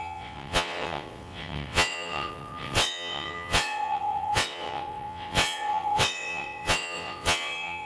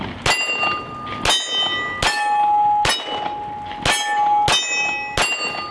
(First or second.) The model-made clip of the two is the first